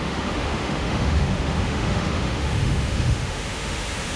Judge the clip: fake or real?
fake